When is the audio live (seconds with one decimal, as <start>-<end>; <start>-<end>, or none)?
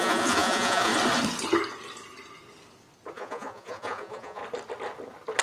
0.9-3.1; 4.4-5.4